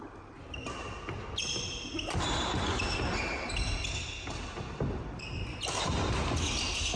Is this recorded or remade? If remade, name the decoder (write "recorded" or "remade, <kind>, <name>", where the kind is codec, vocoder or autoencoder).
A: recorded